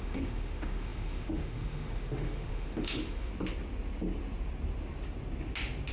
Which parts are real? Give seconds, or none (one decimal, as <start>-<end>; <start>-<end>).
3.3-5.9